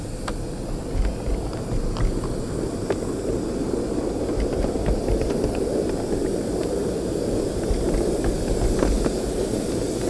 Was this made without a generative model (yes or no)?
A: yes